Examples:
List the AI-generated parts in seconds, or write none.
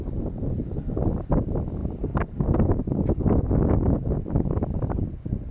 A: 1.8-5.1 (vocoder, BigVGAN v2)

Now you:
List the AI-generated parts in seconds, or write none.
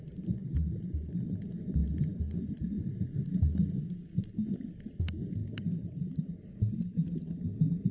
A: 0.4-1.3 (vocoder, BigVGAN v2); 5.4-6.2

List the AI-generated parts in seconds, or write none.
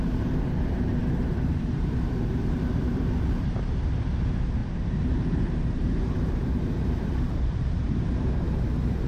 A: 0.0-9.1 (vocoder, BigVGAN v2)